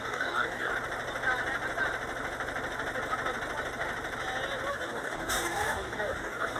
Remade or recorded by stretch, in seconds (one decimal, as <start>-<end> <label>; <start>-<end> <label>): 0.0-0.7 remade; 0.7-4.7 recorded; 4.7-6.6 remade